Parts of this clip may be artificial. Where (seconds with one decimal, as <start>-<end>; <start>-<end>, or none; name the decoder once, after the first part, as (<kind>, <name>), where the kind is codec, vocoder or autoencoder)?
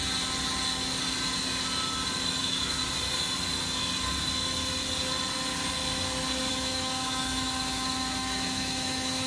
2.4-2.8 (autoencoder, DAC-VAE); 6.5-9.3